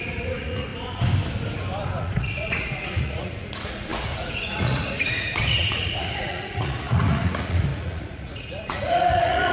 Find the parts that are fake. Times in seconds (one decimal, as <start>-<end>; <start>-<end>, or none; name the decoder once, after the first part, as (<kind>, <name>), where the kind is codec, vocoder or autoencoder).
0.0-0.7 (vocoder, Vocos); 2.0-9.5